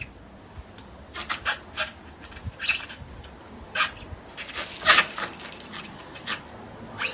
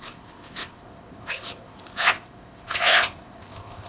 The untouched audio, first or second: first